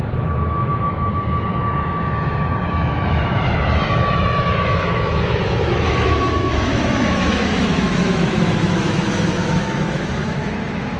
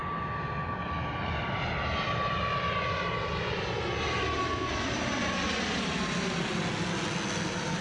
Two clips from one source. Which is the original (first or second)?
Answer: second